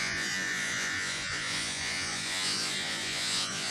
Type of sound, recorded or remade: remade